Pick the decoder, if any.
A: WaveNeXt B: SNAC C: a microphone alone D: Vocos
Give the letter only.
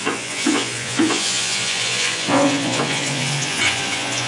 D